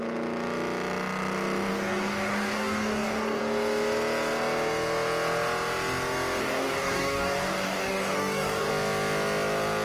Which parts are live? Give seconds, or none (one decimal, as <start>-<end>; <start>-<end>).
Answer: 0.0-1.7; 3.4-6.4; 8.7-9.8

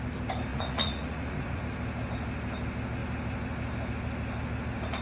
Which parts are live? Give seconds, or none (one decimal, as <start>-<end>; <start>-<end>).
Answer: 0.0-0.5; 1.6-5.0

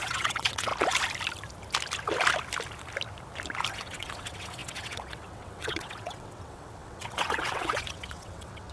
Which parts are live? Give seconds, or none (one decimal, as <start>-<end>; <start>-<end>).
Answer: 0.7-3.7

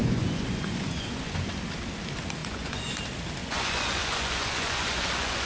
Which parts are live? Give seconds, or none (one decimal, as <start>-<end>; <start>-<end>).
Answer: 1.5-2.4; 3.0-3.4